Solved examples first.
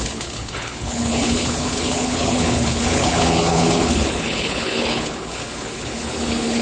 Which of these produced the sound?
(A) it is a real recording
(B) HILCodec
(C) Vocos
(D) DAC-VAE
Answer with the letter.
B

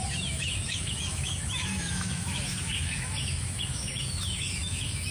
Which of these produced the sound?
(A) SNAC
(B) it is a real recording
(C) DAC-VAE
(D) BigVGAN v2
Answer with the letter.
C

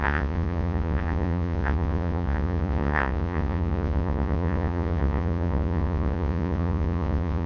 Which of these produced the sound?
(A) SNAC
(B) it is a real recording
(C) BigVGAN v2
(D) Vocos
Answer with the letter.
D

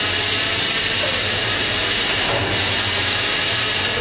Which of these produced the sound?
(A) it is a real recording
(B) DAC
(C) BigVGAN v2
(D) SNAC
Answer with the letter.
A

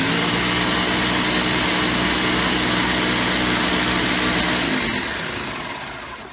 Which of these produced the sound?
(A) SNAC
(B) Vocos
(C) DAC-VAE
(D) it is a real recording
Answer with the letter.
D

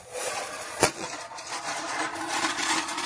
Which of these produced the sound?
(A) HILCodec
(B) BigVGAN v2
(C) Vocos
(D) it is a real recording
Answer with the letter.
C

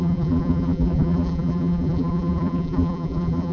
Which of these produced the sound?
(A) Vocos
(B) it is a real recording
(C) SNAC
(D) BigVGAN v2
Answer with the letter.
D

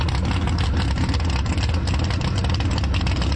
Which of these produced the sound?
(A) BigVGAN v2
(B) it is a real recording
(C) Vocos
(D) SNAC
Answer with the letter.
B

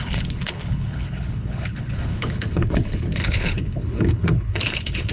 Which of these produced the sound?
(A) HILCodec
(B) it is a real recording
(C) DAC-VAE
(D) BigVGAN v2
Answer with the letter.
A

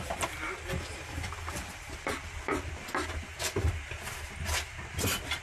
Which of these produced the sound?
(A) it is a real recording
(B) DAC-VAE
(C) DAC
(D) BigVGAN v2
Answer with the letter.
A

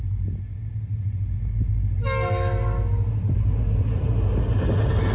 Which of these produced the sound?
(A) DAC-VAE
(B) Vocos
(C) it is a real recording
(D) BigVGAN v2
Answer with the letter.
C